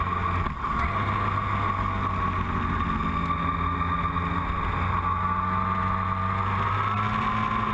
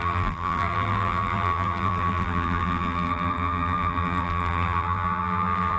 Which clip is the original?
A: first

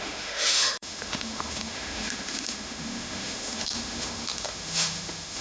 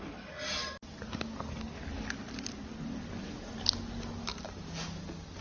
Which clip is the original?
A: second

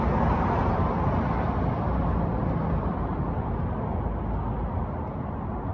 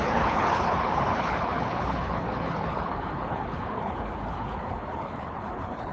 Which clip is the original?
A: first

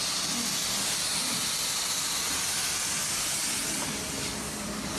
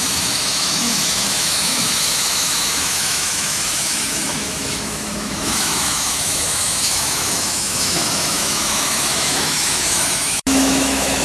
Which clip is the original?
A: first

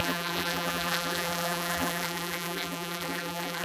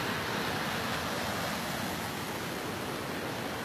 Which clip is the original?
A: second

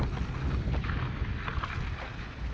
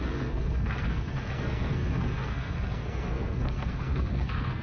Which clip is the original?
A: first